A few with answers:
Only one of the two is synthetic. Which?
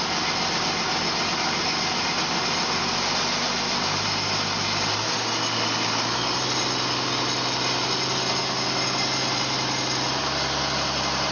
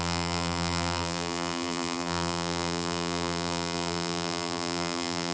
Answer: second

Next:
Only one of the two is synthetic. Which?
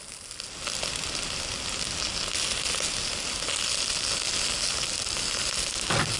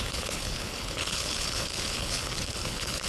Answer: second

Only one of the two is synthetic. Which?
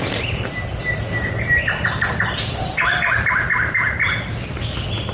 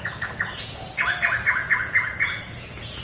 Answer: second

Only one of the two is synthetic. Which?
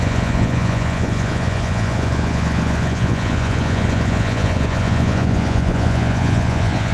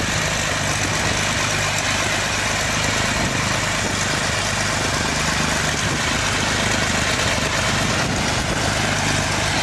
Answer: first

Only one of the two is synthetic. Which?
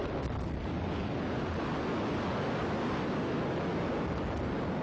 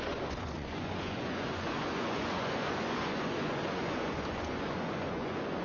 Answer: second